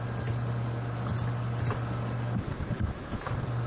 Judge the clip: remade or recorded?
recorded